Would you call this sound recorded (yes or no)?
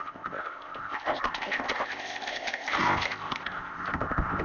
no